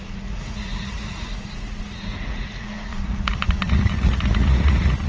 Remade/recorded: remade